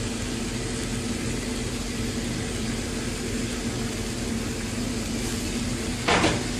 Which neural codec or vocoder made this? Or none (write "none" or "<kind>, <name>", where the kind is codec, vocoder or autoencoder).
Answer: none